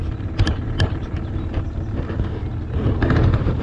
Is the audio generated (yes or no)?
no